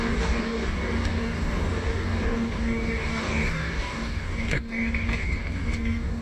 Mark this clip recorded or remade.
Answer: remade